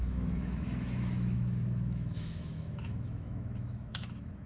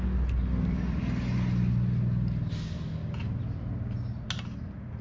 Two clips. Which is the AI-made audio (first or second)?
first